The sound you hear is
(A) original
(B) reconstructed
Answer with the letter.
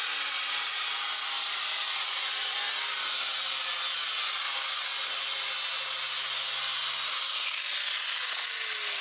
A